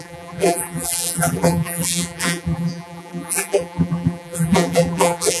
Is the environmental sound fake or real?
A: fake